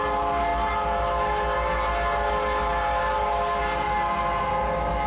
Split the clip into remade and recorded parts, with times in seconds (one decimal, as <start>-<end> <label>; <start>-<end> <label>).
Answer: 0.0-5.1 recorded